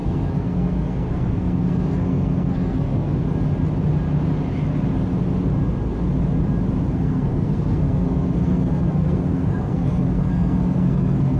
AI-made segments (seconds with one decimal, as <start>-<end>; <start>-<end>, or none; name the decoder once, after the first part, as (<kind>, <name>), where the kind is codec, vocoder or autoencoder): 0.0-3.1 (codec, SNAC); 6.9-11.4